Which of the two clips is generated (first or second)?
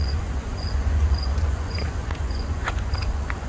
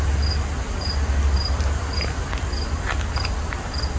first